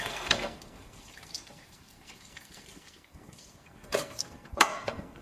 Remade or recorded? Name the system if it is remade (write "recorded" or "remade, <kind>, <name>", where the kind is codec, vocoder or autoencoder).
remade, codec, SNAC